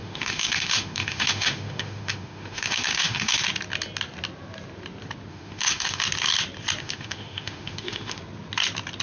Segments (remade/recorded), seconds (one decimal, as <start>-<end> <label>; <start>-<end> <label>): 0.0-3.4 remade; 3.4-5.3 recorded; 5.3-6.0 remade; 6.0-6.8 recorded; 6.8-8.2 remade; 8.2-9.0 recorded